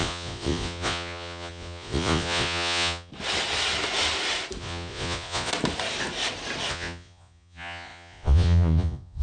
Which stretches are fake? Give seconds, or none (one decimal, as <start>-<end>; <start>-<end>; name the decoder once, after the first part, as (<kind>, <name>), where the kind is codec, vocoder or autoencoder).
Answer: 0.0-3.1 (vocoder, Vocos); 4.6-5.5; 6.7-9.2